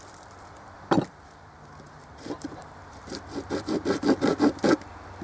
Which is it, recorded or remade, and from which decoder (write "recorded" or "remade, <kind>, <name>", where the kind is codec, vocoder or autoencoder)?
remade, vocoder, BigVGAN v2